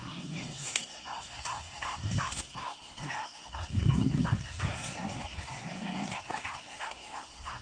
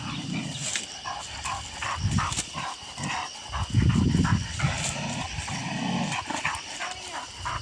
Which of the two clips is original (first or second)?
second